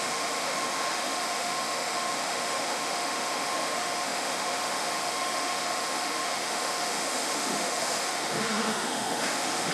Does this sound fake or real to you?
fake